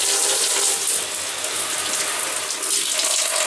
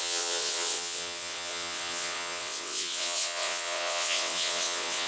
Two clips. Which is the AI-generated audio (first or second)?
second